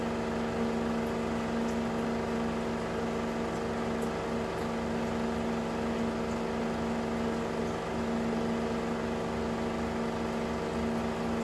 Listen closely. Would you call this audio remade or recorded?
recorded